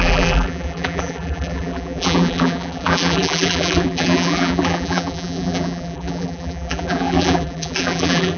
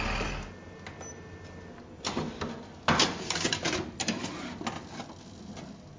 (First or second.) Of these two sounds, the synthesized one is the first